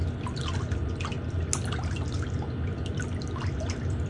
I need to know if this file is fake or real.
real